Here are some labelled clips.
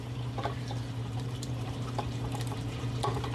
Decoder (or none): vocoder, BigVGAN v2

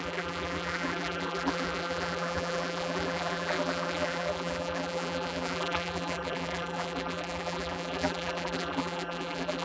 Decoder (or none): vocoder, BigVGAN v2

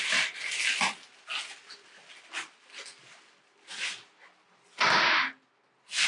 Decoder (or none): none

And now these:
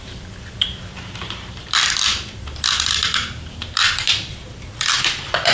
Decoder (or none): vocoder, BigVGAN v2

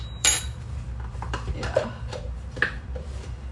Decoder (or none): vocoder, BigVGAN v2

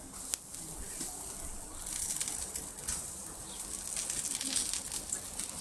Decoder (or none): none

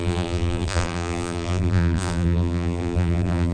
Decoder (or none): vocoder, BigVGAN v2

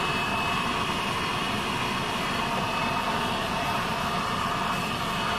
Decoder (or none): vocoder, BigVGAN v2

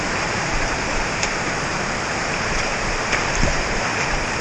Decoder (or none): vocoder, BigVGAN v2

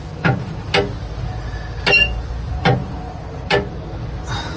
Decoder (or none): none